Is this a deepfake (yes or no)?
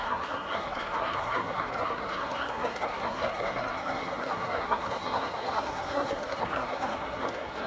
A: yes